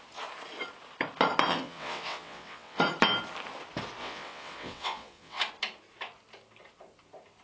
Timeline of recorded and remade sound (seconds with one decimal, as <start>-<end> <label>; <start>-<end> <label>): 0.0-1.5 recorded; 1.5-2.8 remade; 2.8-4.0 recorded; 4.0-5.4 remade; 5.4-7.4 recorded